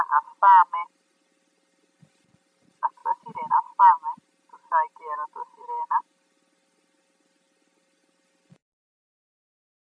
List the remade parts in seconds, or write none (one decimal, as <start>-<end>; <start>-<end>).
none